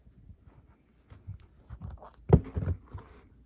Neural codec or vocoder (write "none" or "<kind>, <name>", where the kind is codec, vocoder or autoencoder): none